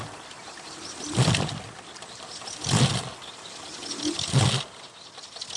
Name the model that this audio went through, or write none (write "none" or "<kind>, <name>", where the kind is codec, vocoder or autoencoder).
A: none